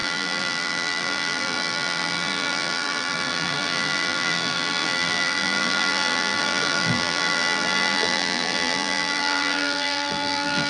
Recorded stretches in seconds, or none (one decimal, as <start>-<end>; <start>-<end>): none